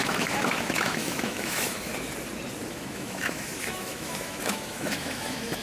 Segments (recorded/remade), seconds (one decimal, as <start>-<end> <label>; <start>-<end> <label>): 0.0-1.9 remade; 1.9-2.7 recorded; 2.7-5.6 remade